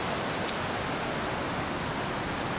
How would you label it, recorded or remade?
recorded